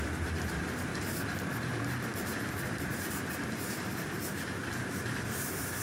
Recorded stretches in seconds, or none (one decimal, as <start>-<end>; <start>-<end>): none